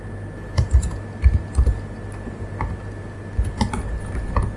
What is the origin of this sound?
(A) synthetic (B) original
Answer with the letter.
B